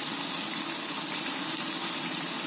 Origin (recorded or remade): recorded